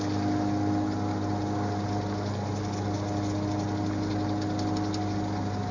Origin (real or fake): real